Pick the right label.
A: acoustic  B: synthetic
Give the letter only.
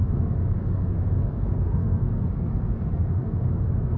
B